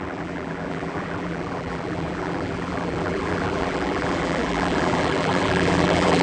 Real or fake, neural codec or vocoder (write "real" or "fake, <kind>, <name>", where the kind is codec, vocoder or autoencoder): fake, vocoder, BigVGAN v2